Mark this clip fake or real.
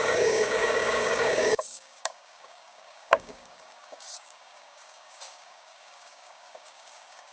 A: fake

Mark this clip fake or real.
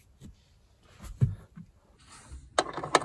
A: real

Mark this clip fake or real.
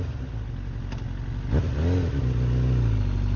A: real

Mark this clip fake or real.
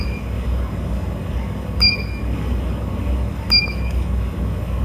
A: fake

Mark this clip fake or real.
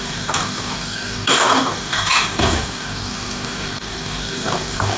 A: fake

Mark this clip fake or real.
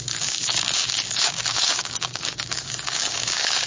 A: fake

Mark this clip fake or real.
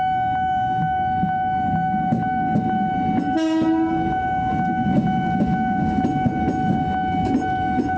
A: real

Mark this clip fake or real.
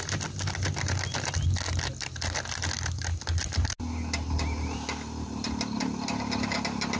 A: real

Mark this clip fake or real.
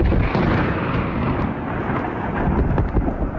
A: real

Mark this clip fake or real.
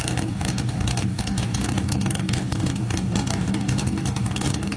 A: fake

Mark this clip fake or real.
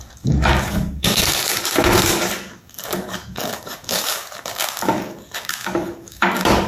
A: fake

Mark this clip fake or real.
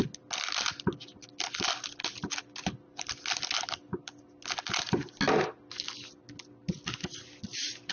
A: real